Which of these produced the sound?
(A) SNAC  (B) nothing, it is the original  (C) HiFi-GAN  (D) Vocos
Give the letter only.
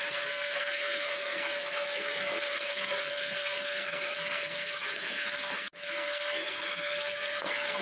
A